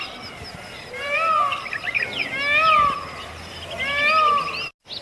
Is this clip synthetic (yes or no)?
no